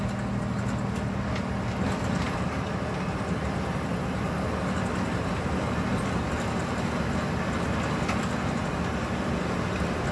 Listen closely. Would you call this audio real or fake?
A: real